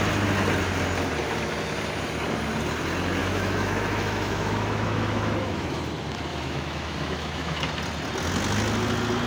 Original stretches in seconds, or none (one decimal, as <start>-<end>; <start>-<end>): 0.0-3.2; 5.8-6.3; 7.7-9.3